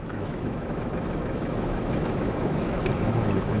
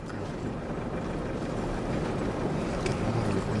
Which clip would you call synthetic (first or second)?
first